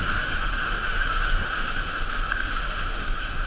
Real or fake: fake